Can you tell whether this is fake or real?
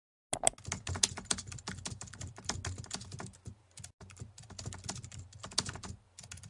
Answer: real